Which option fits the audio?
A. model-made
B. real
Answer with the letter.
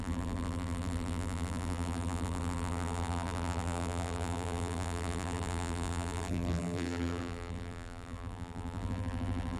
A